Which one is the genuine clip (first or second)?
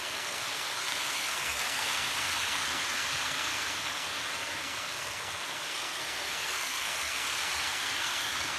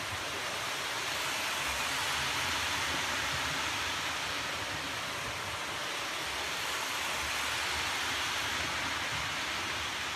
second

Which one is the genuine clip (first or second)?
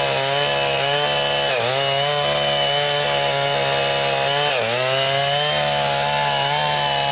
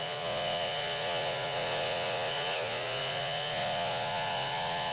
first